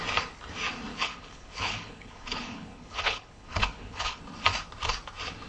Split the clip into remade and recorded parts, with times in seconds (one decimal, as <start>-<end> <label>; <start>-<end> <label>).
0.0-0.9 recorded; 0.9-4.2 remade; 4.2-5.5 recorded